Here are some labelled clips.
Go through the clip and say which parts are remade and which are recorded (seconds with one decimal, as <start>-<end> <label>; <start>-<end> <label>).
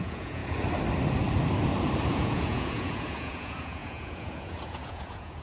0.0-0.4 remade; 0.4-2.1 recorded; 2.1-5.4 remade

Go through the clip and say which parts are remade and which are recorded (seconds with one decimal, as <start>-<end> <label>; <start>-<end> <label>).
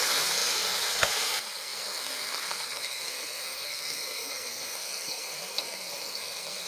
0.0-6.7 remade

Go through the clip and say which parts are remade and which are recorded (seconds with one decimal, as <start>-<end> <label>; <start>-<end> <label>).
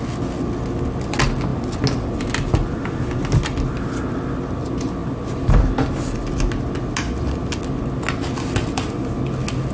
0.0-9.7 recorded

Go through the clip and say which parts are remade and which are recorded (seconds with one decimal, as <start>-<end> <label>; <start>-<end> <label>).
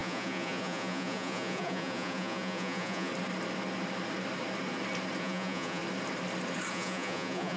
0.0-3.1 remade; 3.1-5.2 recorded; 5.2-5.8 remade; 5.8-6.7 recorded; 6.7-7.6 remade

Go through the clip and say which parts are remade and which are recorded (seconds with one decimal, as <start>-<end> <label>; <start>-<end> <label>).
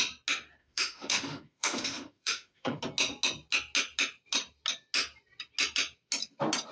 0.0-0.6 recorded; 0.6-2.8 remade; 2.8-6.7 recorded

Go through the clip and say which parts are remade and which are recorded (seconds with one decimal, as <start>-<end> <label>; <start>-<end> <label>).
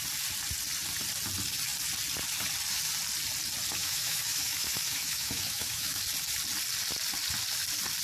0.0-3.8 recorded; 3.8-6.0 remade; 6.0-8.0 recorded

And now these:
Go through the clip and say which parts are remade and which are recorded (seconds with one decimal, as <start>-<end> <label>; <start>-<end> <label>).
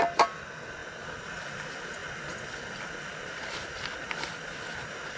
0.0-5.2 recorded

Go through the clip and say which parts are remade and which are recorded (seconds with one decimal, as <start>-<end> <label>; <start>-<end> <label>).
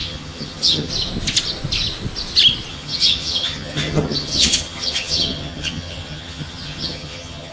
0.0-0.9 remade; 0.9-2.7 recorded; 2.7-7.5 remade